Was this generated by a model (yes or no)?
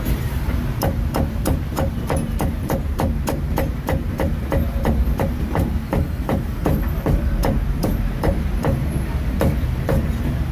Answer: yes